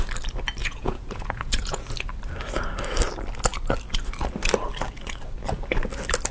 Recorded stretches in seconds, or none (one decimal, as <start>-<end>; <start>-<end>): 0.0-0.6; 1.9-6.3

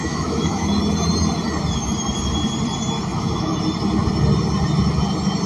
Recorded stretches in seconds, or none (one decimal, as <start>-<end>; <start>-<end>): 0.8-3.1; 3.6-5.5

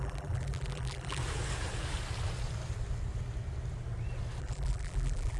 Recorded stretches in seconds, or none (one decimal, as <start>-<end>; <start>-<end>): 1.2-4.4

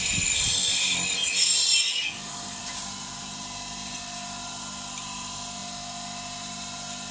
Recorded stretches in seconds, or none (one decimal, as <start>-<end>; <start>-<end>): 0.0-1.9; 2.6-7.1

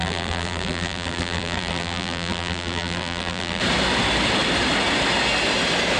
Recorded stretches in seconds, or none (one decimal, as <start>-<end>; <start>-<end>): 3.6-6.0